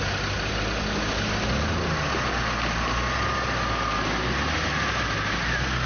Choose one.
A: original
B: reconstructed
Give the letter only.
A